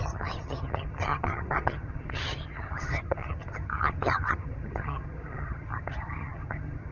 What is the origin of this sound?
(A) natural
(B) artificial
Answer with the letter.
B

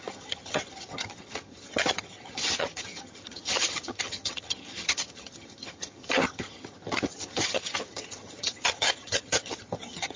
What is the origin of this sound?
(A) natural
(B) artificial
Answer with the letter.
B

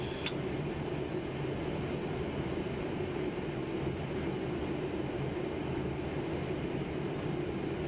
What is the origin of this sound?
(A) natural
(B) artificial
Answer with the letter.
A